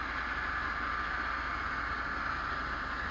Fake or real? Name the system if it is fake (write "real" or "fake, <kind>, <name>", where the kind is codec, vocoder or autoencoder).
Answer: real